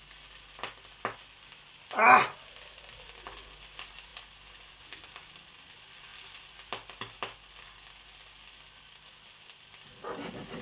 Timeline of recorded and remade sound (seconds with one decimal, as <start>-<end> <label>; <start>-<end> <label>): 0.0-10.6 recorded